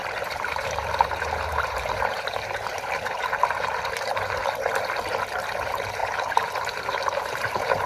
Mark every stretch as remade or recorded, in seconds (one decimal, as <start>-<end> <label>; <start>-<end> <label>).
0.0-3.8 remade; 3.8-6.0 recorded; 6.0-7.9 remade